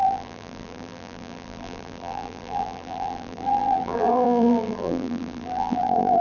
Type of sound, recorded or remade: remade